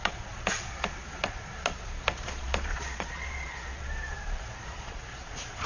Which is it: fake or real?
fake